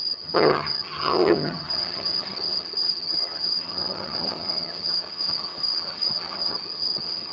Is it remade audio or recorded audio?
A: remade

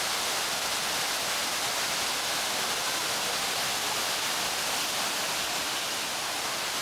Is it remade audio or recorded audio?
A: recorded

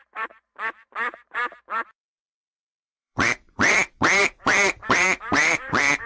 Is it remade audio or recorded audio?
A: remade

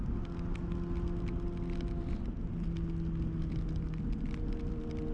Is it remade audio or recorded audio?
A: recorded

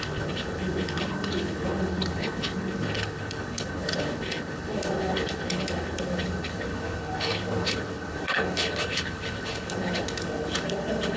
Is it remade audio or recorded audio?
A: remade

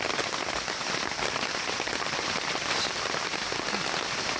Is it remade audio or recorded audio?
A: recorded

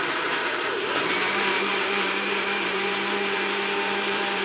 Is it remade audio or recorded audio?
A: remade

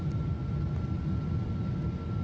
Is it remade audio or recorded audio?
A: recorded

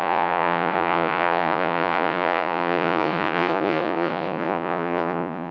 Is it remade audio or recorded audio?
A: remade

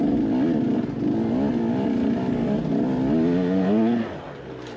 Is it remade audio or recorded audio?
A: recorded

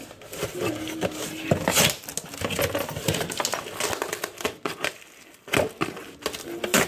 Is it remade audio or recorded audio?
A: recorded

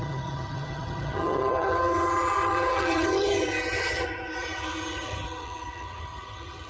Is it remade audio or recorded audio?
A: remade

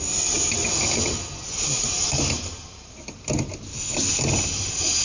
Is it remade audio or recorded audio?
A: recorded